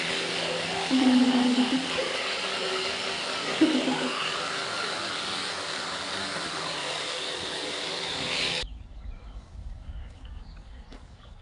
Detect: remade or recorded remade